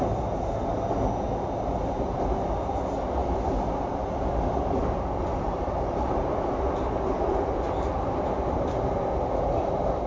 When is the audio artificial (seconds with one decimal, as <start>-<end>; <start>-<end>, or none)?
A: none